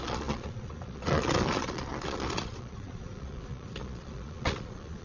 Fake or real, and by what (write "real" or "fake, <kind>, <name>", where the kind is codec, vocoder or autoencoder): fake, vocoder, Vocos